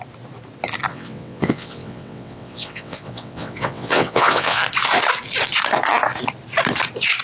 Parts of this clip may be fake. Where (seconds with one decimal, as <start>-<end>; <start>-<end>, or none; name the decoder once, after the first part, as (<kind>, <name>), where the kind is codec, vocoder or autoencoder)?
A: 0.9-4.6 (vocoder, WaveNeXt)